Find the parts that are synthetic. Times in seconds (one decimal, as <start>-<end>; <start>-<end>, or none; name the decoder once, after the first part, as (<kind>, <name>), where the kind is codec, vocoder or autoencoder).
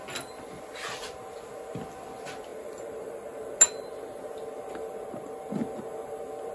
none